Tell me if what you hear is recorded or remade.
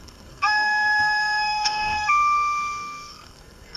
remade